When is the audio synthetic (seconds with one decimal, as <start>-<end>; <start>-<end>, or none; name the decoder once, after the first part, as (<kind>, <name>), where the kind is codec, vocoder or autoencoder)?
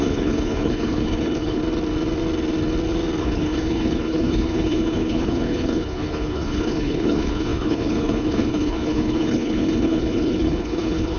0.0-1.6 (codec, HILCodec); 3.2-11.2